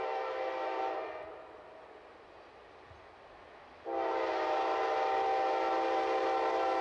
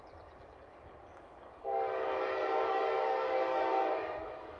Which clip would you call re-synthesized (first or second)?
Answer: second